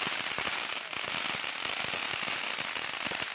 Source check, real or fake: real